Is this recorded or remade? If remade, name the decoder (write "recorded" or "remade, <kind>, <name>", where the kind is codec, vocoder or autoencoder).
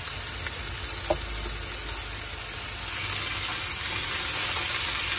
recorded